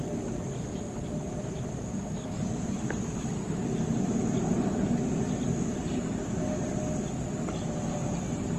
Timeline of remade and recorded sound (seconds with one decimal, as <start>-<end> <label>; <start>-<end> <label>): 0.0-8.6 recorded